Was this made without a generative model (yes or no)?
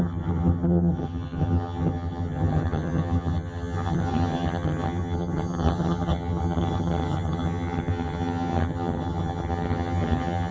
no